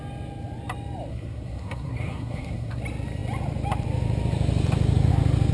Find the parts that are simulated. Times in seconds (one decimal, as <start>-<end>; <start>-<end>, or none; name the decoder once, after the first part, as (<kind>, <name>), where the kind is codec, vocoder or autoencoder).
1.1-2.8 (codec, SNAC)